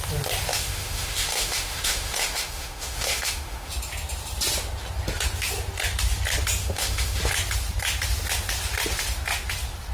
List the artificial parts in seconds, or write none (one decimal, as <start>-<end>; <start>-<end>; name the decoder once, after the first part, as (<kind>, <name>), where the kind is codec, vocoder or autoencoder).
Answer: 0.5-3.7 (autoencoder, DAC-VAE); 6.6-7.2